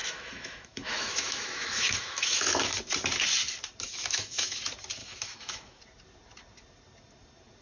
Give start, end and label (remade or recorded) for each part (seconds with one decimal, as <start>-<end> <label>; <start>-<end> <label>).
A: 0.0-2.7 remade; 2.7-3.9 recorded; 3.9-4.6 remade; 4.6-5.0 recorded; 5.0-5.8 remade; 5.8-7.6 recorded